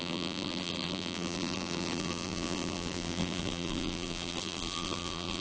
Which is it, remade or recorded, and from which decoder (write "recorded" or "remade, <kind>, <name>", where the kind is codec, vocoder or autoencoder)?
remade, vocoder, BigVGAN v2